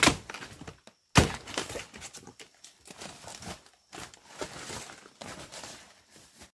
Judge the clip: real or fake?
real